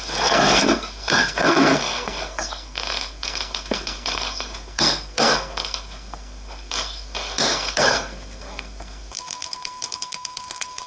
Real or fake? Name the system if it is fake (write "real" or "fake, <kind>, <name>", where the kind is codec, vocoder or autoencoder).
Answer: fake, codec, SNAC